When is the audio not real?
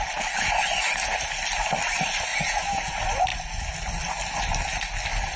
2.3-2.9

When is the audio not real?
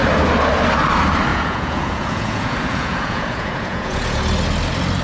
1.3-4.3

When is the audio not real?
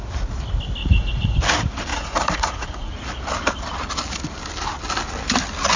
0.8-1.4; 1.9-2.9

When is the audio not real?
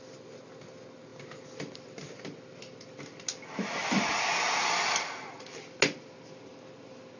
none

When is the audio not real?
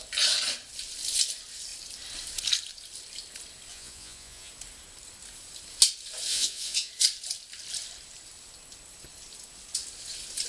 3.7-4.5; 6.3-6.9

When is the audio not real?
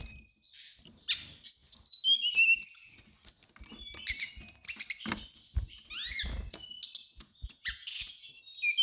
7.1-8.4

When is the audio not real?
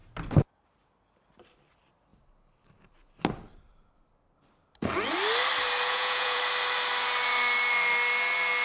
5.9-6.4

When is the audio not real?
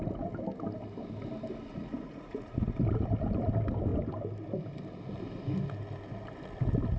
1.7-2.6